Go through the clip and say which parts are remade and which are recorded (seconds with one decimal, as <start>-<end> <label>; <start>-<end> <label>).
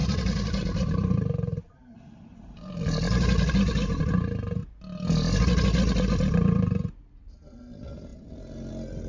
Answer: 0.0-4.0 remade; 4.0-8.1 recorded; 8.1-8.7 remade; 8.7-9.1 recorded